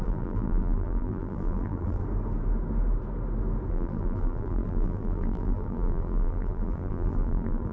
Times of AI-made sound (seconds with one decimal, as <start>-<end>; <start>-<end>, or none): 0.0-2.0; 3.7-7.7